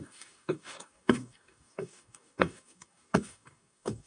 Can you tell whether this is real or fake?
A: fake